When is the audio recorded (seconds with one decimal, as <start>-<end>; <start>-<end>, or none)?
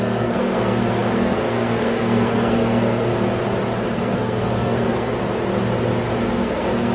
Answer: 3.1-3.9; 5.1-6.2